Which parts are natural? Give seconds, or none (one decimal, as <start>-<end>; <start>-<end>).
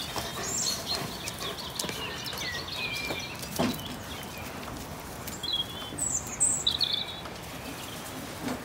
0.0-8.6